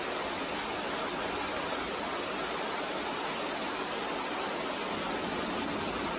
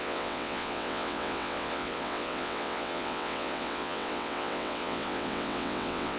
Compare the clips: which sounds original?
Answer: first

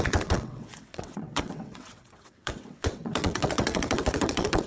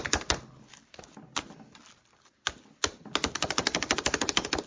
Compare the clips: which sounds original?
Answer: second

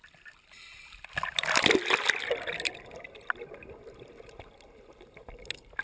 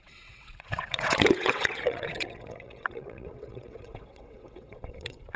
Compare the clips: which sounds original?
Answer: first